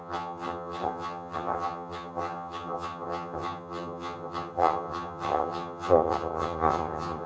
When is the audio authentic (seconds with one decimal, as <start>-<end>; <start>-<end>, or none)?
none